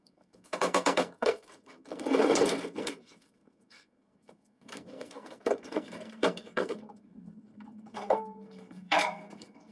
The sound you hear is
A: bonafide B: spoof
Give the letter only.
B